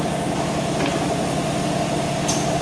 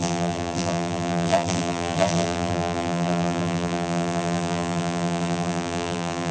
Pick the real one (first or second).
first